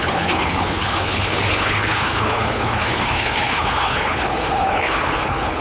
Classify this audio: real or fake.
fake